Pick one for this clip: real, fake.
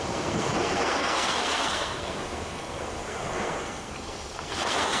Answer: fake